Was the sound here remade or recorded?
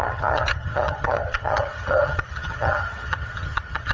remade